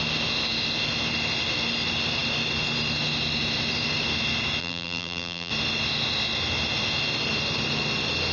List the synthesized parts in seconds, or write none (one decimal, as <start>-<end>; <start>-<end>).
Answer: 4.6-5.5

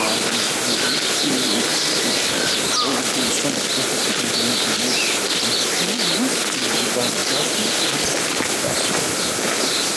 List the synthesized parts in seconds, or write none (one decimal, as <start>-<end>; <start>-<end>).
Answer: 1.7-2.3

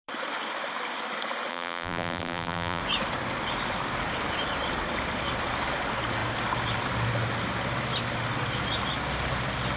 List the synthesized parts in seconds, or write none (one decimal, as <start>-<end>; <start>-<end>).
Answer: 1.5-2.8